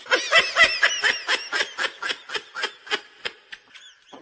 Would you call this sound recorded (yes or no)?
yes